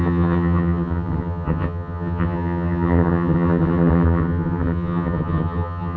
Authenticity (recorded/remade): remade